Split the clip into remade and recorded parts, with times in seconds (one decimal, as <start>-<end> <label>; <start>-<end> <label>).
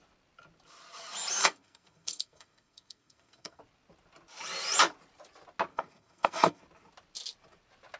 0.0-1.4 recorded; 1.4-3.6 remade; 3.6-5.7 recorded; 5.7-6.6 remade; 6.6-8.0 recorded